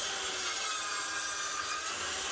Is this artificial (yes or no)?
no